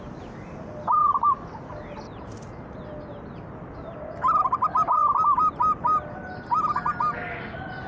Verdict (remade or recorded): recorded